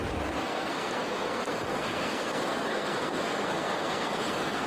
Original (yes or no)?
no